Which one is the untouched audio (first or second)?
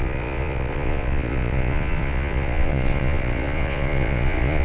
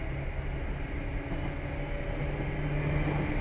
second